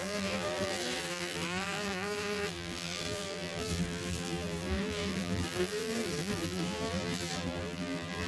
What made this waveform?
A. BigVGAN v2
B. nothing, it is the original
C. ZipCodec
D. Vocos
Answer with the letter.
A